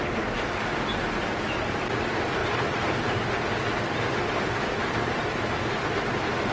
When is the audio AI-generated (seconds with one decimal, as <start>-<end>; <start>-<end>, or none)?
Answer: 2.4-3.3; 4.2-5.2